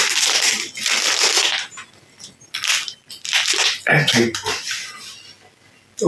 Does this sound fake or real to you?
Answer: real